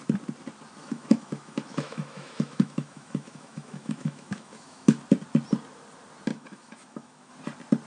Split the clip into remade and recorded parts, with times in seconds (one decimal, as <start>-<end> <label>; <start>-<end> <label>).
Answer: 0.0-0.8 recorded; 0.8-5.0 remade; 5.0-6.3 recorded; 6.3-7.3 remade; 7.3-7.9 recorded